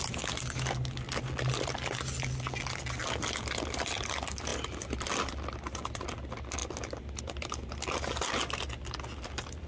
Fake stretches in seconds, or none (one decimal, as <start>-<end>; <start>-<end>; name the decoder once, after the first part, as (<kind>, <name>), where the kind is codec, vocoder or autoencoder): none